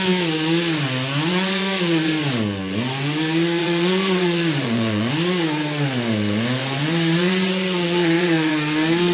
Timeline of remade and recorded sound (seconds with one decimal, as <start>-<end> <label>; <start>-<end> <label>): 0.0-1.3 recorded; 1.3-2.1 remade; 2.1-3.6 recorded; 3.6-5.1 remade; 5.1-6.6 recorded; 6.6-8.5 remade; 8.5-9.1 recorded